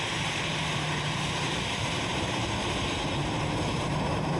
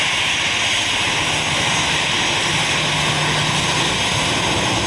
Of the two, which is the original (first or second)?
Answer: second